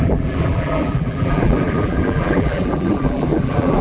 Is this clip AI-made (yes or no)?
yes